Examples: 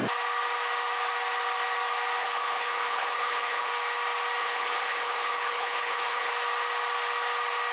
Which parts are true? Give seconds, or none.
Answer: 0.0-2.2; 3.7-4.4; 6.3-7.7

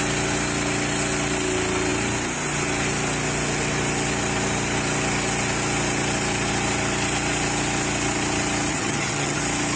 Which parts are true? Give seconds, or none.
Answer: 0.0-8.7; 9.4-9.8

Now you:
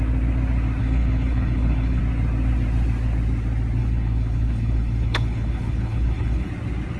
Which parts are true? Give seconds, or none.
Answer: 0.0-0.8; 2.0-3.8; 6.5-7.0

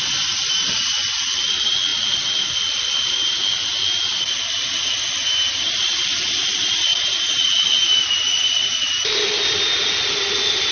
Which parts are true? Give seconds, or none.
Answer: 0.0-10.7

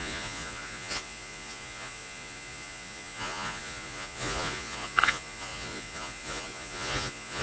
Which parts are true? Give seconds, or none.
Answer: none

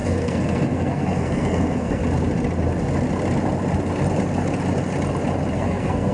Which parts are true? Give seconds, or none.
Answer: 2.0-5.5